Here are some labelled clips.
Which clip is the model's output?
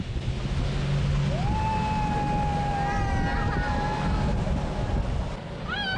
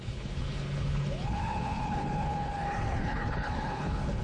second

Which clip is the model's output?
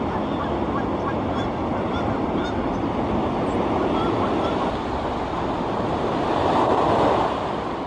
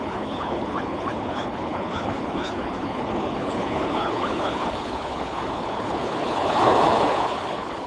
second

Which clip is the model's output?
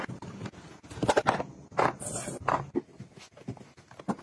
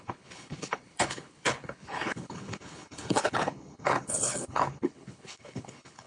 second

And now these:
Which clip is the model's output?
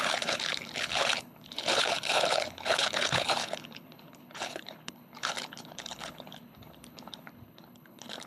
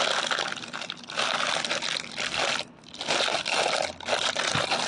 first